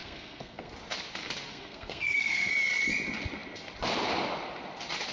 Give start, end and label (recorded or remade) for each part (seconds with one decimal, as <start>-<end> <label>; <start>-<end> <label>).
0.0-0.7 remade; 0.7-1.5 recorded; 1.5-2.5 remade; 2.5-5.1 recorded